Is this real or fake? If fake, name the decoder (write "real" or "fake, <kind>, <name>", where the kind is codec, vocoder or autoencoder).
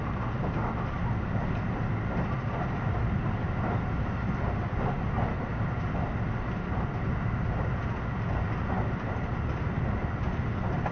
real